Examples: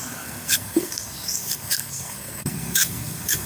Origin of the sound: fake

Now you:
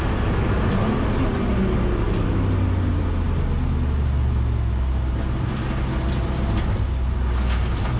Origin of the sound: real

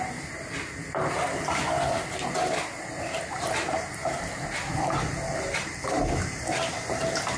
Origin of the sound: real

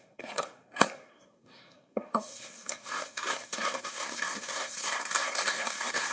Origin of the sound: fake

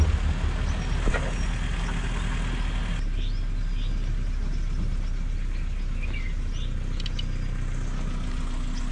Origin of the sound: real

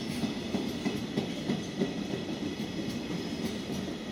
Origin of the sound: real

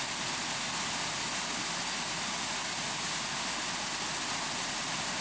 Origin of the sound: real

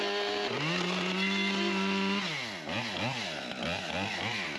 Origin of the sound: real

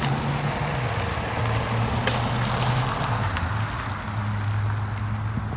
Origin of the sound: real